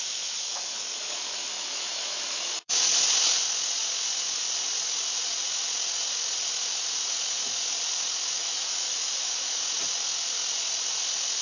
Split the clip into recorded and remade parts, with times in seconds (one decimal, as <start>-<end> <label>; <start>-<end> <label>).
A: 0.0-2.7 remade; 2.7-8.4 recorded; 8.4-9.6 remade; 9.6-11.4 recorded